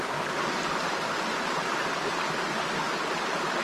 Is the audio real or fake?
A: real